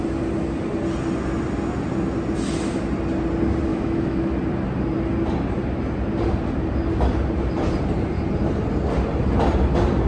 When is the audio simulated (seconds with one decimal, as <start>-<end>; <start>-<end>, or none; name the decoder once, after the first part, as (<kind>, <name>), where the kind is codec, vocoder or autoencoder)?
3.7-4.3 (autoencoder, DAC-VAE)

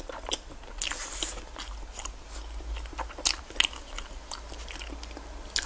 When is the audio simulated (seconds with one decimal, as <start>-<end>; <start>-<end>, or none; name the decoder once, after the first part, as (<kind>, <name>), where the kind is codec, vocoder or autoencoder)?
none

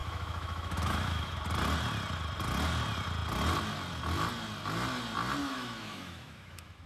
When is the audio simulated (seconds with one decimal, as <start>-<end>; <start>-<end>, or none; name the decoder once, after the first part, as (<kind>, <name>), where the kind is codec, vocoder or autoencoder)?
0.0-1.4 (autoencoder, DAC-VAE); 5.4-6.9

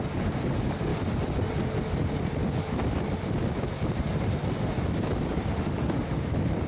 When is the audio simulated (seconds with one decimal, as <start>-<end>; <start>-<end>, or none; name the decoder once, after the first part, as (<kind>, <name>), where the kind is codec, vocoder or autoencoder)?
5.5-6.3 (autoencoder, DAC-VAE)